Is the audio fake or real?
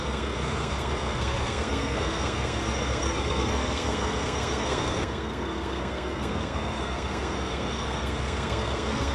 fake